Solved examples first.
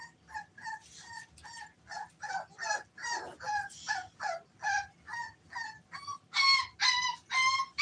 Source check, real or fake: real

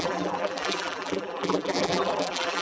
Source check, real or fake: fake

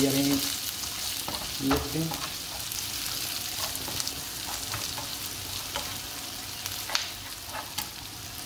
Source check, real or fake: real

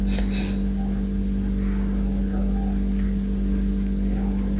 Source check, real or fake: real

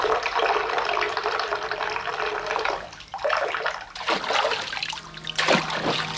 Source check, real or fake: real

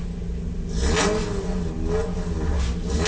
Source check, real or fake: real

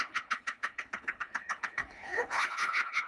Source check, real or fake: fake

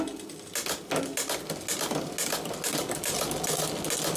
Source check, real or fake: real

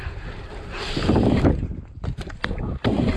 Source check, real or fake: fake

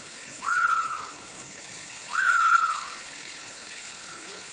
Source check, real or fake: fake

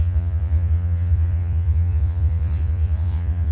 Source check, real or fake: fake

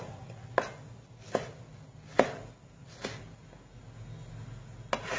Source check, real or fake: real